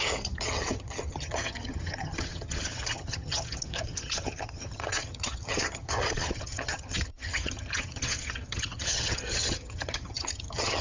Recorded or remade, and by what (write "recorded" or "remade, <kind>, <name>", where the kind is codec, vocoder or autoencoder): remade, vocoder, HiFi-GAN